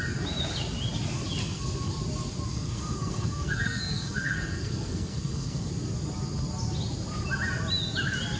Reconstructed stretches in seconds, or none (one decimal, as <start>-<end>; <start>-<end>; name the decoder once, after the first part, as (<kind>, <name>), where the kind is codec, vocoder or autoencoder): 1.4-1.9 (codec, SNAC); 2.5-5.7